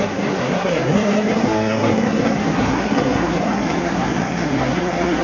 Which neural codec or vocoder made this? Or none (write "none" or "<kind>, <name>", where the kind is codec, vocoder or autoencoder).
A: codec, SNAC